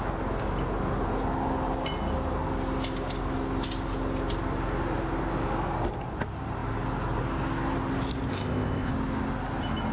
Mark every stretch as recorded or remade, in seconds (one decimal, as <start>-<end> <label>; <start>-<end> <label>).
0.0-8.3 recorded; 8.3-8.9 remade; 8.9-9.9 recorded